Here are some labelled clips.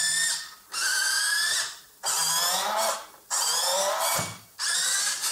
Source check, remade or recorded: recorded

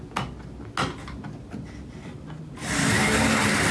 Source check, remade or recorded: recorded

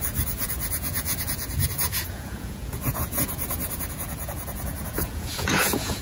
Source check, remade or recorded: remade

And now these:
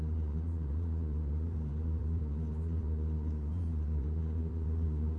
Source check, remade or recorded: remade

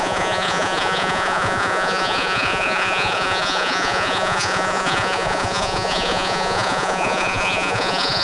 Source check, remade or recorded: remade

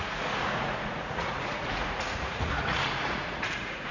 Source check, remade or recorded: remade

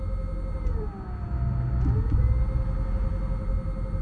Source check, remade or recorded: recorded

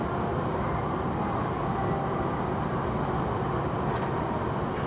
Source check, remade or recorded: recorded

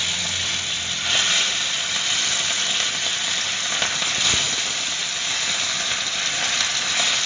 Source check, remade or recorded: recorded